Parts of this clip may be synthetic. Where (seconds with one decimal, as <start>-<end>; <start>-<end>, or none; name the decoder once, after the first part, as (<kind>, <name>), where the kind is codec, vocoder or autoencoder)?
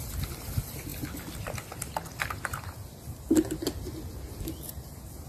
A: none